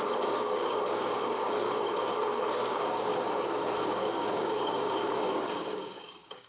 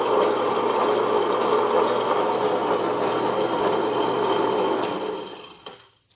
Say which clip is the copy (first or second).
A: first